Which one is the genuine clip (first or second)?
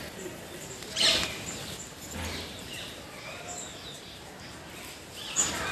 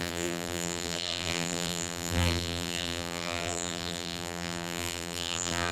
first